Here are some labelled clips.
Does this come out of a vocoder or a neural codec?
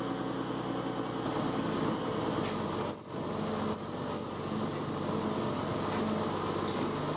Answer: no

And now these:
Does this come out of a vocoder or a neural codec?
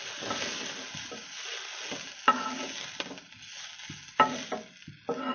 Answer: no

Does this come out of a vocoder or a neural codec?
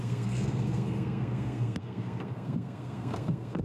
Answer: yes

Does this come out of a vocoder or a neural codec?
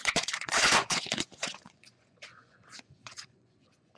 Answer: yes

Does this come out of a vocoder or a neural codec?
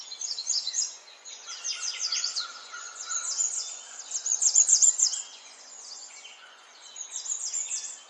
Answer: yes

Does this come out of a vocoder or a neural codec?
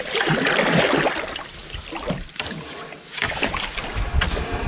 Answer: no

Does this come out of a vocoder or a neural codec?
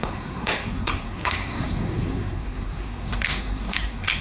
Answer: yes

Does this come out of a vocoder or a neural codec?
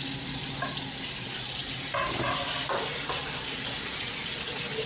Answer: no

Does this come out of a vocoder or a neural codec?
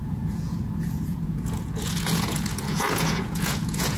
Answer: yes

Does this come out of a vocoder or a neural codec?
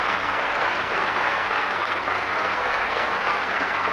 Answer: yes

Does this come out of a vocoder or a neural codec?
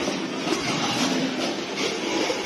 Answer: no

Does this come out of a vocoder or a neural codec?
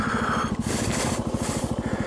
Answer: yes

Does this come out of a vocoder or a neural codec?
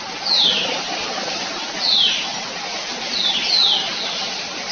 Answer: no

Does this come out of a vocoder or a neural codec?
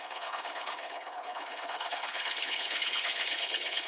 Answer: yes